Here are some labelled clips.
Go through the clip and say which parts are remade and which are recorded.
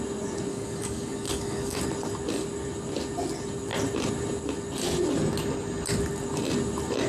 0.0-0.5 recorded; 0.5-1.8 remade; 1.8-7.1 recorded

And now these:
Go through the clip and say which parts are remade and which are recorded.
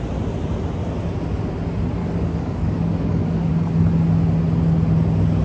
0.0-2.0 recorded; 2.0-3.5 remade; 3.5-5.4 recorded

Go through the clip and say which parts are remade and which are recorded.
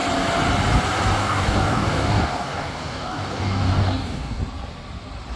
0.0-1.2 recorded; 1.2-4.4 remade; 4.4-5.4 recorded